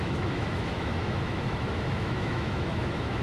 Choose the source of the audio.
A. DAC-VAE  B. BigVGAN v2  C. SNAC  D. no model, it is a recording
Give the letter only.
A